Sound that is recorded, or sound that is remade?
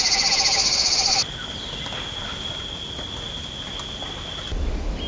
recorded